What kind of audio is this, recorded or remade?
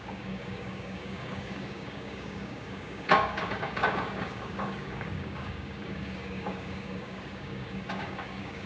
remade